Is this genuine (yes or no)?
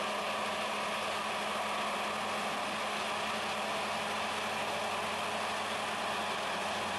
yes